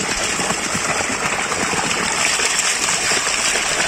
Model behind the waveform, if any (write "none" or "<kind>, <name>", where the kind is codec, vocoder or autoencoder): none